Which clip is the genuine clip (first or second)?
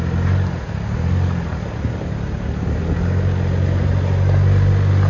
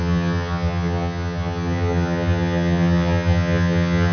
first